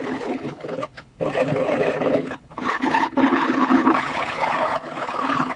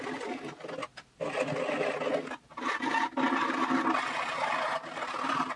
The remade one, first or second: first